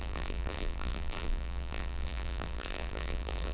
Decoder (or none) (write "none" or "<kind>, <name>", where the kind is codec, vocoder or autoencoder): vocoder, BigVGAN v2